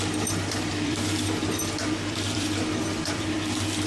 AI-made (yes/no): yes